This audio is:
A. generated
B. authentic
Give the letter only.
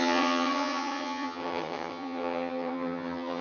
A